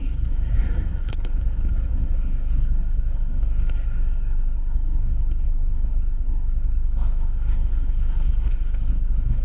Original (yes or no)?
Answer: no